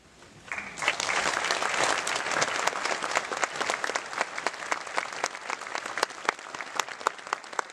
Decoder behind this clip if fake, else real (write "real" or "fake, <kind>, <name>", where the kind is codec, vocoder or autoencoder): real